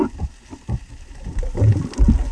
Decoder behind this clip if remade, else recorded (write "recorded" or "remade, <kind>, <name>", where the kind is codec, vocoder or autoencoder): recorded